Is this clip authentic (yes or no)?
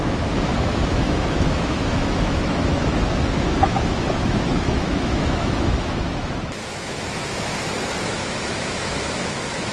no